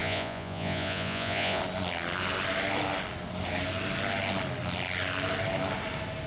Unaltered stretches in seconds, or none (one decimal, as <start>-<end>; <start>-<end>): 1.6-6.3